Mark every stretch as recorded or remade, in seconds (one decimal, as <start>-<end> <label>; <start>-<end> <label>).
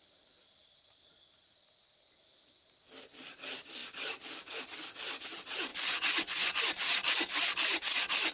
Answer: 0.0-5.7 recorded; 5.7-6.6 remade; 6.6-8.3 recorded